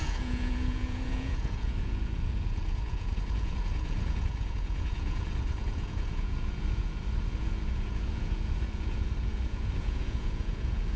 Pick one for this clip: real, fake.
fake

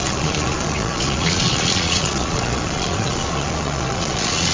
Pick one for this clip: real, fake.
fake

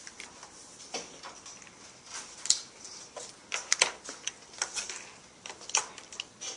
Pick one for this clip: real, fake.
real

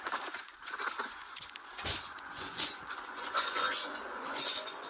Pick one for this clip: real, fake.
fake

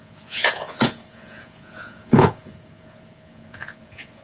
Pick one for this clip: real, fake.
fake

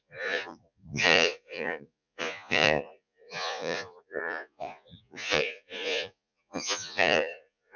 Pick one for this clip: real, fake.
fake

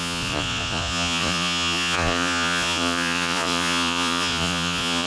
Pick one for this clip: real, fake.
fake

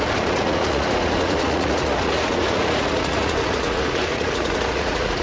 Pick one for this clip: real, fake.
fake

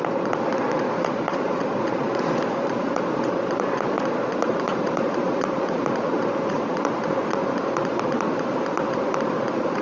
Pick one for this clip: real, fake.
fake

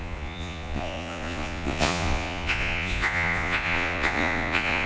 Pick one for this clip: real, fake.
fake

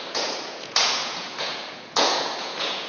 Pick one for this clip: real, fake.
fake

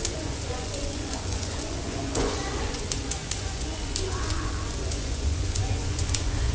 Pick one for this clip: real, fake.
fake